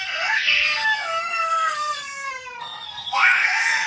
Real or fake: fake